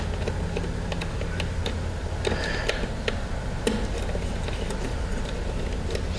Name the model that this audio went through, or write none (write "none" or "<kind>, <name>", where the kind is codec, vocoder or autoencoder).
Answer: none